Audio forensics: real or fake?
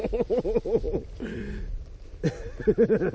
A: real